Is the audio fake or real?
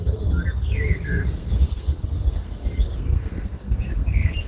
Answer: fake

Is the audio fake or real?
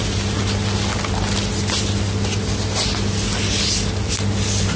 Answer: real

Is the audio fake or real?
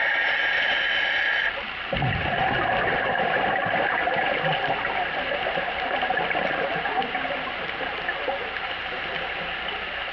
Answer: real